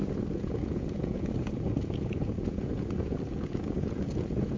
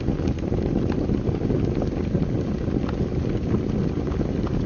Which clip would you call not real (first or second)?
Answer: first